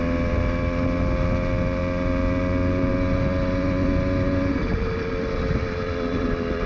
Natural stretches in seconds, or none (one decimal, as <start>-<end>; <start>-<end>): 0.0-6.7